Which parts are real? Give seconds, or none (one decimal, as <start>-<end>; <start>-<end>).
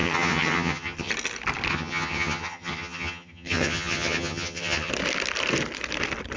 1.1-1.7; 4.9-6.4